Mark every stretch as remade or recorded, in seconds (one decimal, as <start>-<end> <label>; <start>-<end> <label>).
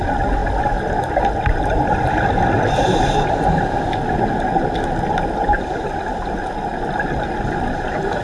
0.0-8.2 recorded